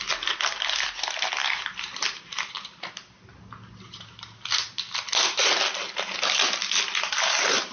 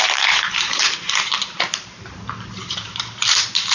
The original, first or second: first